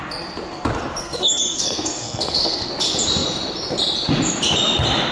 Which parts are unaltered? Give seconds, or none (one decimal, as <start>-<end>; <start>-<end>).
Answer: 0.0-1.0; 2.7-5.1